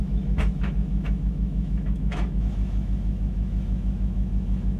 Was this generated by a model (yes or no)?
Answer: yes